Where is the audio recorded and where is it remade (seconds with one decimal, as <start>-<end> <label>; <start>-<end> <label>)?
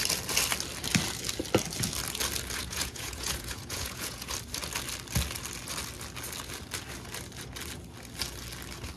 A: 0.0-2.6 recorded; 2.6-4.3 remade; 4.3-9.0 recorded